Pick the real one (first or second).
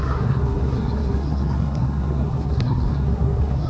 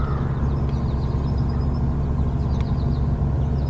second